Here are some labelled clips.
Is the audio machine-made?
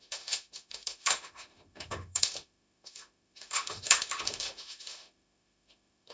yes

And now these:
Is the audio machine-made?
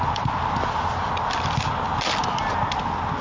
no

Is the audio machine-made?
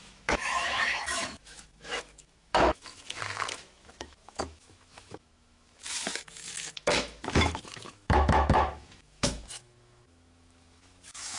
yes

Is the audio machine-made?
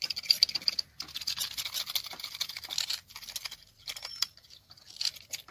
no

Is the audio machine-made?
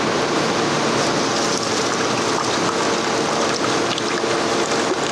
no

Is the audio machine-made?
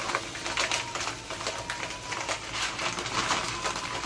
no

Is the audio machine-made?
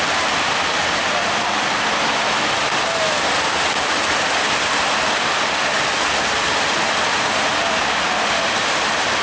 no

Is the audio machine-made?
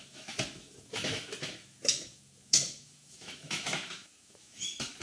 yes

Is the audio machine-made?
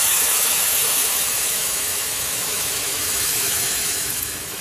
yes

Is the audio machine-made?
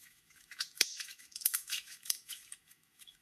yes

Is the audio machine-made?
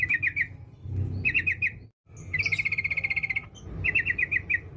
no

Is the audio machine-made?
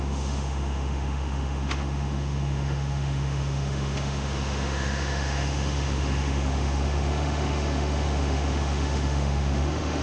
yes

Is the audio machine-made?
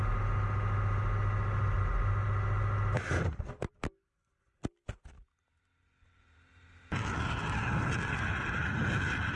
no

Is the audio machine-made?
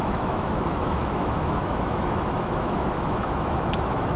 yes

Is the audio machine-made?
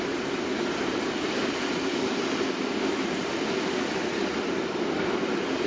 no